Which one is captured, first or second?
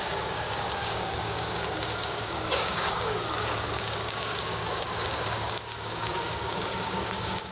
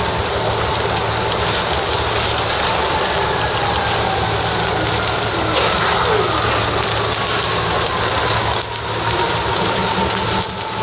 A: second